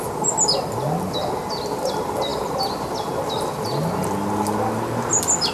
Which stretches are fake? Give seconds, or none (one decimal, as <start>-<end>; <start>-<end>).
none